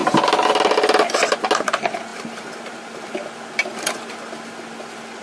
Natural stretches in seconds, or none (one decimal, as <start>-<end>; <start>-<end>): 0.0-5.2